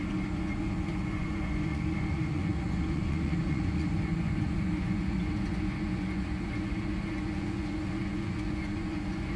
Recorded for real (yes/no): no